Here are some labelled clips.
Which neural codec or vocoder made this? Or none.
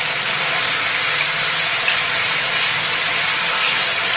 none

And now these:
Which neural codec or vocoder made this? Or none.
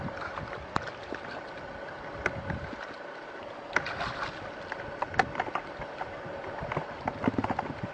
none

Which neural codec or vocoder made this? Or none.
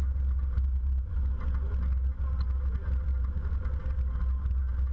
none